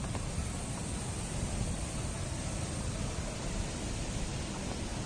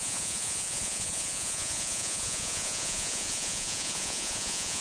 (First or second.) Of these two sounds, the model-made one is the second